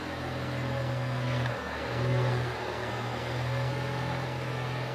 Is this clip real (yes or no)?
no